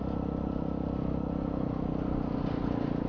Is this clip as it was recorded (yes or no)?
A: yes